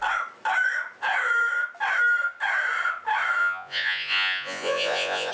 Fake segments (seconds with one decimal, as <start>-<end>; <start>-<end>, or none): 3.4-5.3